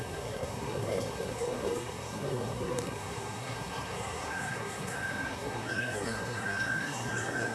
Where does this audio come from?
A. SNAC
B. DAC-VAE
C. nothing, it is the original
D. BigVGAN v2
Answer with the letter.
A